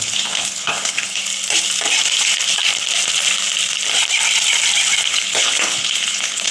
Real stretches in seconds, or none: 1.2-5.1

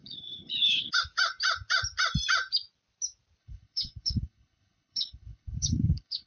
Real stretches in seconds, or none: 0.9-3.4

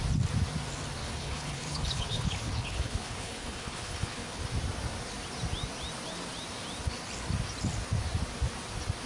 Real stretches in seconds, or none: 0.0-1.0; 4.4-9.1

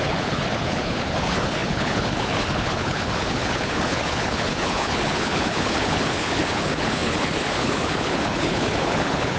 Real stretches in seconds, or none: none

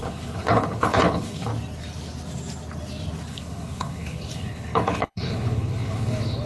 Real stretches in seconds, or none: 1.5-3.3

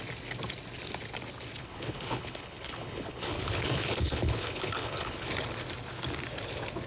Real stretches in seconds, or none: 0.0-1.6; 5.3-6.9

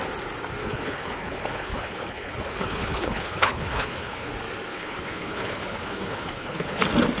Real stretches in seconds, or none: 0.0-0.6; 4.3-4.7; 6.8-7.2

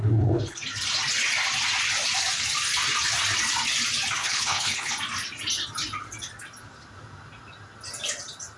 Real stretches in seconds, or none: 0.6-4.2; 4.9-8.6